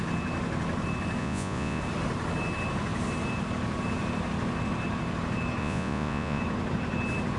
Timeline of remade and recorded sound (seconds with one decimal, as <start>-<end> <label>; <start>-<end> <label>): 0.0-1.2 recorded; 1.2-1.8 remade; 1.8-5.6 recorded; 5.6-6.4 remade; 6.4-7.4 recorded